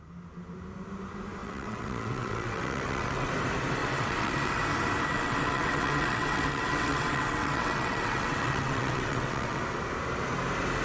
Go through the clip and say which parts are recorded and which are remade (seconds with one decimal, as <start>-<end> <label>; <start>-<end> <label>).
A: 0.0-1.4 recorded; 1.4-3.3 remade; 3.3-3.8 recorded; 3.8-4.6 remade; 4.6-5.1 recorded; 5.1-9.6 remade; 9.6-10.8 recorded